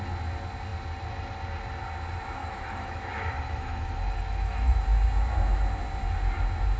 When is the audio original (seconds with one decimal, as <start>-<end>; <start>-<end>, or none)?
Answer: 0.0-2.4; 4.8-6.8